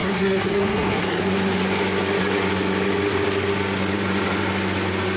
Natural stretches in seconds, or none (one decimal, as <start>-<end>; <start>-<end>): 1.2-5.2

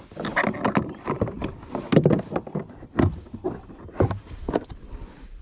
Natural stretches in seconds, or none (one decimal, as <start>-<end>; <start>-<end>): 0.0-5.4